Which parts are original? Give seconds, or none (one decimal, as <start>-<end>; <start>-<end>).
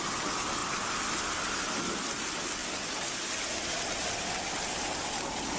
0.0-5.6